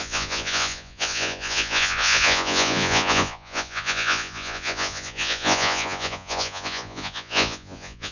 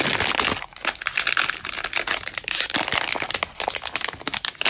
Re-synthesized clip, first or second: first